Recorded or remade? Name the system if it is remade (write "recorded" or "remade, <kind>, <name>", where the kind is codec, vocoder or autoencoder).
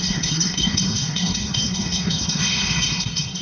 remade, codec, SNAC